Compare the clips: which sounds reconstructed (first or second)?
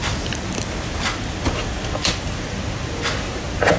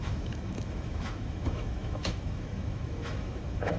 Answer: second